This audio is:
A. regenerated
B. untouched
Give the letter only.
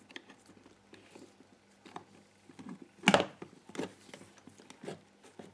B